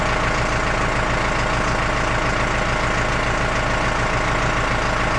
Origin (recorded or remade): recorded